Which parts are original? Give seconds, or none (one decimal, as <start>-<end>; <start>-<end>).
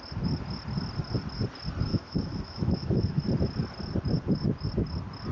0.0-1.9; 3.2-5.3